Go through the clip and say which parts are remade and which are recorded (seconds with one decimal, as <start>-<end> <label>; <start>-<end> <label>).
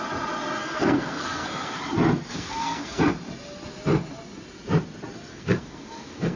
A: 0.0-0.6 recorded; 0.6-1.8 remade; 1.8-2.3 recorded; 2.3-3.0 remade; 3.0-5.3 recorded; 5.3-6.4 remade